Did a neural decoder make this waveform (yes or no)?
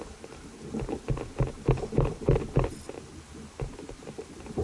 no